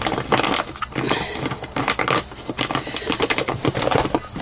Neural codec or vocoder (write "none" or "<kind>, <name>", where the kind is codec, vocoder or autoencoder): none